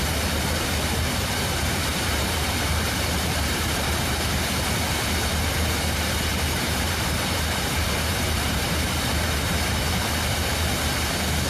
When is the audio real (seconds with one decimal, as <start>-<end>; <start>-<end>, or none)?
0.0-1.9; 4.1-6.3; 9.9-11.5